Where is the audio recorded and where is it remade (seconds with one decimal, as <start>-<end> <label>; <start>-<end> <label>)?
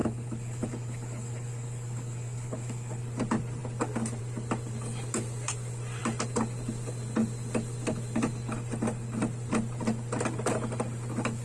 0.0-3.0 remade; 3.0-11.4 recorded